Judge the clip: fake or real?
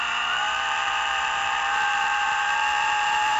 fake